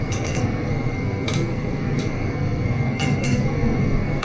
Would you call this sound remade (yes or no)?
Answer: yes